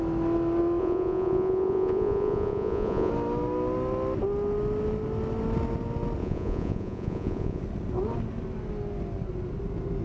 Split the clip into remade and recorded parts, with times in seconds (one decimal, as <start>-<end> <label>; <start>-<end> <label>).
0.0-0.8 recorded; 0.8-3.1 remade; 3.1-6.2 recorded; 6.2-7.6 remade; 7.6-10.0 recorded